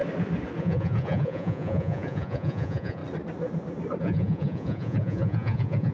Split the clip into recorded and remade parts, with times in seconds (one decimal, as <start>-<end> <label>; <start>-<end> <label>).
0.0-0.6 recorded; 0.6-3.0 remade; 3.0-4.0 recorded; 4.0-5.9 remade